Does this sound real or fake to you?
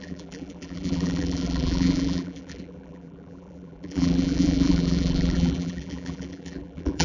fake